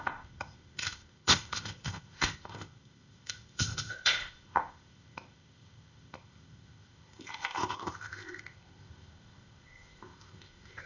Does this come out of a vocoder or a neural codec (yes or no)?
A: yes